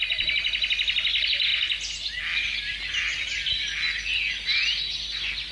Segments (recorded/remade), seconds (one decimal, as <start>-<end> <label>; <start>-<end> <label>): 0.0-5.5 recorded